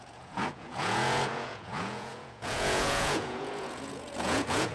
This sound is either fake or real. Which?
fake